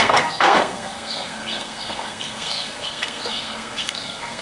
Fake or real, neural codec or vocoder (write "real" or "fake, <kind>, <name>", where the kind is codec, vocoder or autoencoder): fake, codec, SNAC